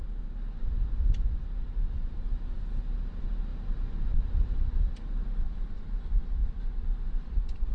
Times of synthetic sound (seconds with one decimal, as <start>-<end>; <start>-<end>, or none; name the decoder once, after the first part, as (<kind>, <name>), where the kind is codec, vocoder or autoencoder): 6.4-7.7 (vocoder, BigVGAN v2)